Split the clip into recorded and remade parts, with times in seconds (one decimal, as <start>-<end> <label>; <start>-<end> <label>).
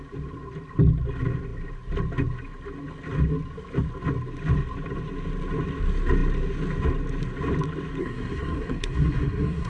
0.0-8.0 recorded; 8.0-9.7 remade